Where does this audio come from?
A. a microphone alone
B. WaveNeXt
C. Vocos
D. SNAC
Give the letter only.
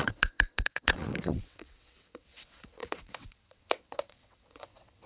B